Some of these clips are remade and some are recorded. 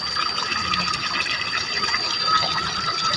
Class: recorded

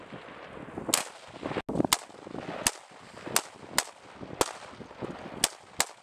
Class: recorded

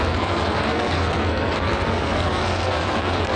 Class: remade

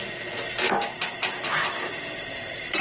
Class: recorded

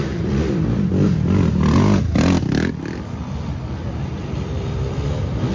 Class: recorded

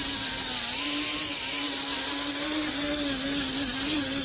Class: recorded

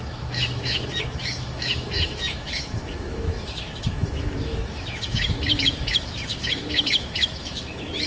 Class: remade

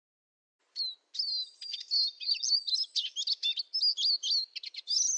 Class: recorded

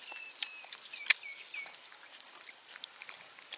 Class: recorded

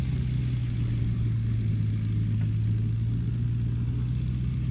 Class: recorded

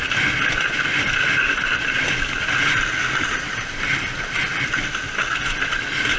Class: recorded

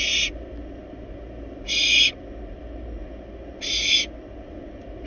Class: recorded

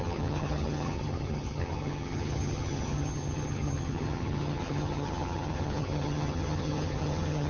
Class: remade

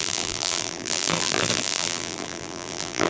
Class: remade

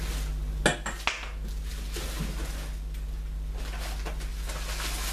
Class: recorded